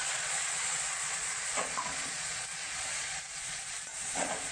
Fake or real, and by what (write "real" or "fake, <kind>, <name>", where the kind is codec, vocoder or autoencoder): fake, vocoder, Vocos